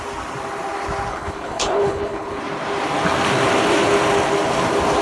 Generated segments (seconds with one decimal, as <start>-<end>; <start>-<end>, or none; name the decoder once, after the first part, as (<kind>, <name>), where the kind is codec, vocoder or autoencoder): 1.1-2.4 (codec, HILCodec)